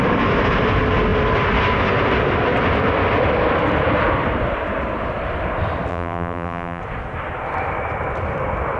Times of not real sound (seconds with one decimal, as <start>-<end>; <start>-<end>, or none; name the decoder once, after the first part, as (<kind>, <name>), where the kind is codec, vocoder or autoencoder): 5.9-6.8 (vocoder, BigVGAN v2)